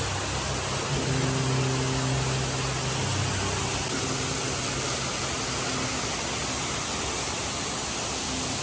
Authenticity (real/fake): real